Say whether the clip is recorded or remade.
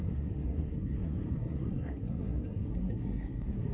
remade